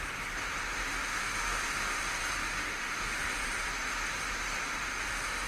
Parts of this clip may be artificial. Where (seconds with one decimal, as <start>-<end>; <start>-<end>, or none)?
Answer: 1.1-2.0; 2.4-3.2; 4.6-5.5